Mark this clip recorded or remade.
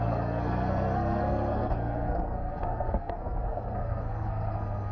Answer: remade